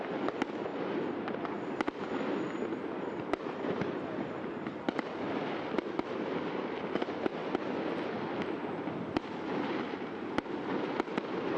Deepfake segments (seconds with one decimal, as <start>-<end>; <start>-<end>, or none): 0.0-0.7; 2.1-7.4; 10.6-11.6